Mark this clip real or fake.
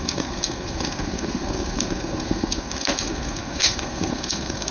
fake